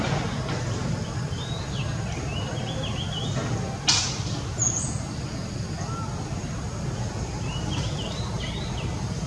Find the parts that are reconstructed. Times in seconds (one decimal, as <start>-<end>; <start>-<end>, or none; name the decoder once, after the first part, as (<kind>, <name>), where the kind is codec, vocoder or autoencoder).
none